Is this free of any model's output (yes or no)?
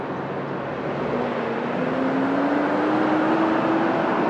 yes